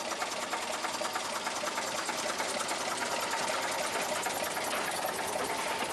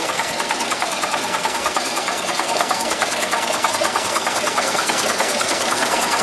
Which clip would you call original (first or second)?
first